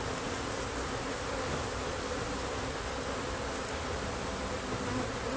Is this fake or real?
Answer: real